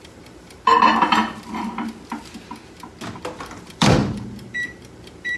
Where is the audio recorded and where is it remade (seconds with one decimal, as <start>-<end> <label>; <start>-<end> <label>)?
0.0-1.2 remade; 1.2-3.4 recorded; 3.4-5.4 remade

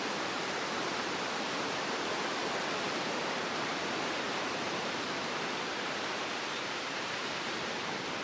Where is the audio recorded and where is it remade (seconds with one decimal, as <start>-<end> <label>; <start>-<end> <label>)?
0.0-8.2 remade

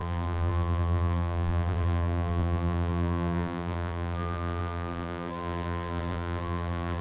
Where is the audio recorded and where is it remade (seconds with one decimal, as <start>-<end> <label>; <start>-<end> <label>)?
0.0-7.0 remade

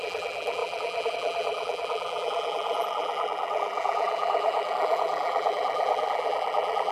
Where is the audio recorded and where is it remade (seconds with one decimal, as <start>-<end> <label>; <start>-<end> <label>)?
0.0-6.9 remade

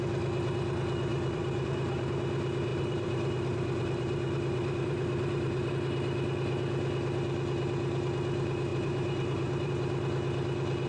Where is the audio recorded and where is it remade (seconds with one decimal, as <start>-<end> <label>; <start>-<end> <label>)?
0.0-1.1 recorded; 1.1-2.1 remade; 2.1-2.7 recorded; 2.7-5.7 remade; 5.7-8.7 recorded; 8.7-9.7 remade; 9.7-10.9 recorded